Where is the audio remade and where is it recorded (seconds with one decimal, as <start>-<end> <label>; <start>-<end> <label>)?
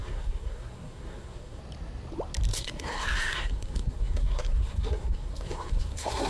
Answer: 0.0-1.6 remade; 1.6-2.5 recorded; 2.5-6.3 remade